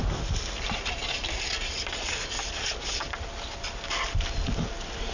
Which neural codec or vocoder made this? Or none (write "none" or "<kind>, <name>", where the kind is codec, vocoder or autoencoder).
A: none